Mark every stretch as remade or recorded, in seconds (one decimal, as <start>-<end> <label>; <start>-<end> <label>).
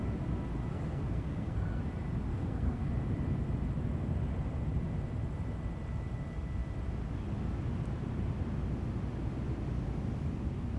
0.0-0.7 recorded; 0.7-1.8 remade; 1.8-2.3 recorded; 2.3-2.9 remade; 2.9-10.8 recorded